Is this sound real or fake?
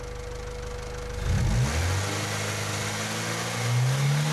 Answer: real